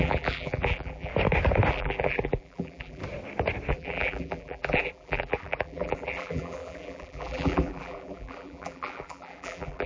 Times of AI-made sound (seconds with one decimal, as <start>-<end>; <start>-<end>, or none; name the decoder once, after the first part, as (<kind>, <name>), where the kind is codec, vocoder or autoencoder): 0.0-1.1 (vocoder, BigVGAN v2); 1.7-3.0; 3.7-9.9